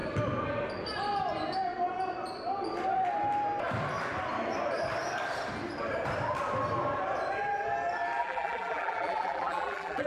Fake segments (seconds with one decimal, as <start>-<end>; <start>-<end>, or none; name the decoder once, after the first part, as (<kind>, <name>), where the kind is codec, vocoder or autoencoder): 8.2-10.1 (vocoder, BigVGAN v2)

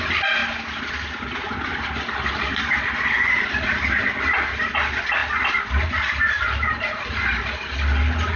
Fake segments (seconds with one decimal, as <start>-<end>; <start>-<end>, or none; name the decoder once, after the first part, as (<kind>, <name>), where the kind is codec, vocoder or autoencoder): 0.0-0.4 (vocoder, BigVGAN v2); 2.3-8.4